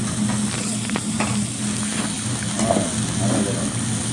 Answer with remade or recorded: recorded